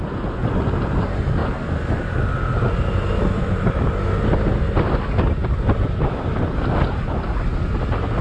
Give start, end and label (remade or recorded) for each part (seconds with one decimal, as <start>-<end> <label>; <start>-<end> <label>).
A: 0.0-5.4 recorded; 5.4-6.4 remade; 6.4-7.5 recorded; 7.5-8.2 remade